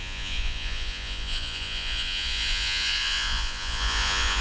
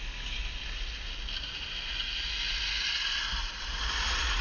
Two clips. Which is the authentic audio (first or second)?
second